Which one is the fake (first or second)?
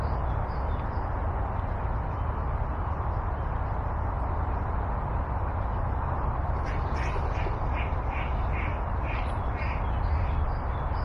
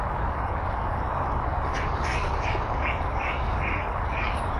second